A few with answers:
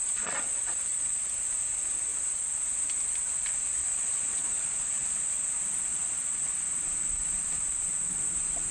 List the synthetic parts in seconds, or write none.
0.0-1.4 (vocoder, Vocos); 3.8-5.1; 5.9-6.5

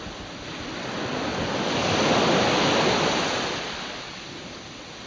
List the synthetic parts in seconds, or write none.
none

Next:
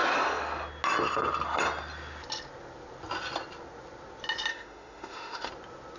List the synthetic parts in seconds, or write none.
4.5-5.5 (autoencoder, DAC-VAE)

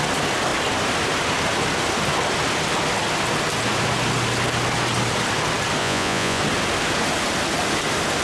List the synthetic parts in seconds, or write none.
5.8-6.4 (vocoder, Vocos)

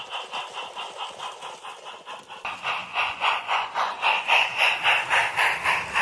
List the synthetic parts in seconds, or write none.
2.8-4.7 (vocoder, Vocos)

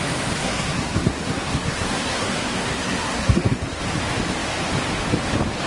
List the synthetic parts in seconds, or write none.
0.4-3.8 (codec, SNAC)

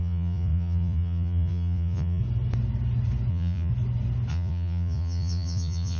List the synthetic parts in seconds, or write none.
0.0-2.2 (vocoder, Vocos); 3.3-3.7; 4.3-6.0

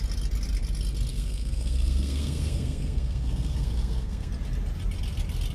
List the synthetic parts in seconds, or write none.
1.1-4.3 (codec, SNAC)